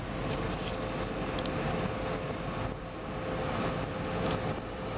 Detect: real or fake real